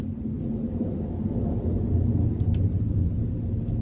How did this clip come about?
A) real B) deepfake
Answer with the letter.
A